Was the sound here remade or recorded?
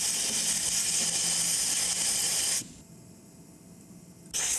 recorded